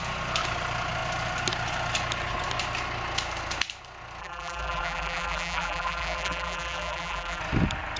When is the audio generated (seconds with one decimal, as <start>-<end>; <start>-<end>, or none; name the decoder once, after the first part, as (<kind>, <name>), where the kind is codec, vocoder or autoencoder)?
4.2-7.4 (vocoder, BigVGAN v2)